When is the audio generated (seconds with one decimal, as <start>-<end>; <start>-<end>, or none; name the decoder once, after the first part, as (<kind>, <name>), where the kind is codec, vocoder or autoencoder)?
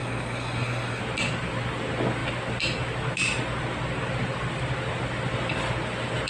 0.0-1.0 (codec, SNAC)